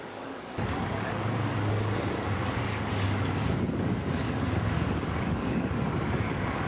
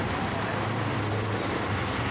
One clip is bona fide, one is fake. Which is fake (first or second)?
first